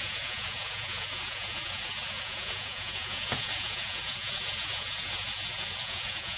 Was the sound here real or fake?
fake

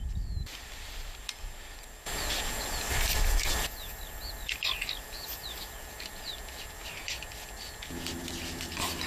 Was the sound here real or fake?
real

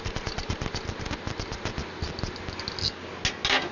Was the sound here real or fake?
real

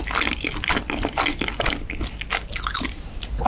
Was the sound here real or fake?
real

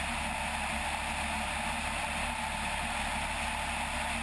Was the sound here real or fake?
real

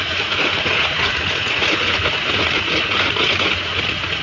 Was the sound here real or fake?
fake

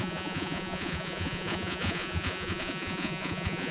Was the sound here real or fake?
fake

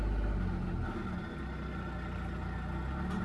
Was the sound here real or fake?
real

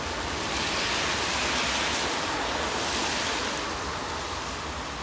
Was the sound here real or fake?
real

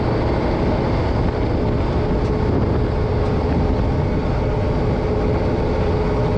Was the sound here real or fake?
real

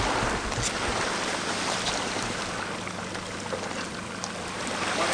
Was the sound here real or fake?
real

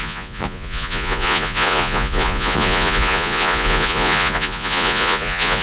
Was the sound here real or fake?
fake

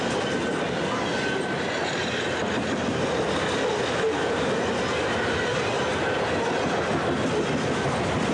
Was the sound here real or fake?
real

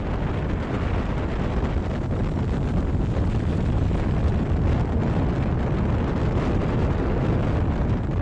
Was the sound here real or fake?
real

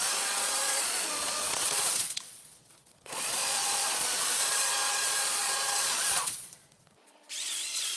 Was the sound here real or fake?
fake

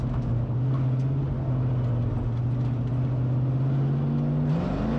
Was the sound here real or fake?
real